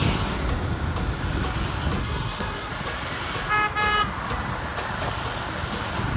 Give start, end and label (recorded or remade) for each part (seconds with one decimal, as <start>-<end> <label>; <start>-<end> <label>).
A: 0.0-2.0 recorded; 2.0-2.7 remade; 2.7-6.2 recorded